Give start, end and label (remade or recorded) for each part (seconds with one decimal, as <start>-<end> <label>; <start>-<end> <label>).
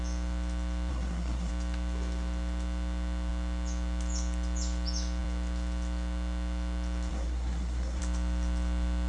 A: 0.0-0.9 recorded; 0.9-1.5 remade; 1.5-7.1 recorded; 7.1-8.0 remade; 8.0-9.1 recorded